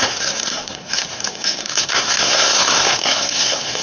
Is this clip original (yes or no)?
no